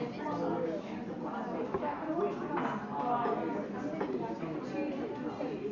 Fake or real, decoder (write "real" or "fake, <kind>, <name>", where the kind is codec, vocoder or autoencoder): real